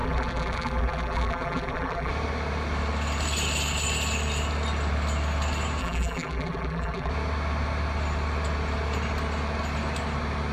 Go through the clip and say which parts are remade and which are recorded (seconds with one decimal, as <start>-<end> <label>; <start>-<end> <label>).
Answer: 0.0-2.1 remade; 2.1-5.8 recorded; 5.8-7.1 remade; 7.1-10.5 recorded